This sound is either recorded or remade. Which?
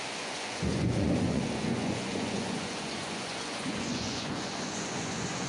remade